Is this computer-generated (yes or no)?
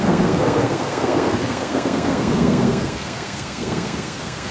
yes